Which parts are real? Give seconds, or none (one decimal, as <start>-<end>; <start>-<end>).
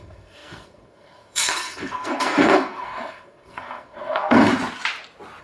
4.5-5.4